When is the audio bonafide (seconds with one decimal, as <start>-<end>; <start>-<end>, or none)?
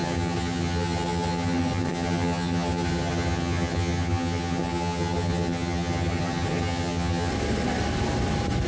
7.3-8.7